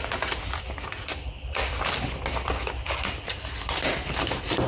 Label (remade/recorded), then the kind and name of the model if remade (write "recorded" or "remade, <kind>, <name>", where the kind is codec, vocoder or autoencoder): recorded